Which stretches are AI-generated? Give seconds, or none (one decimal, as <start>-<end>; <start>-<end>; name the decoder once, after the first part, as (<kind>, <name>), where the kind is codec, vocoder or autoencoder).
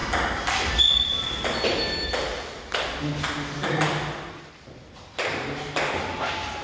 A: 0.0-2.1 (vocoder, BigVGAN v2)